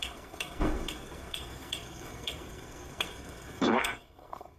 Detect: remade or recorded remade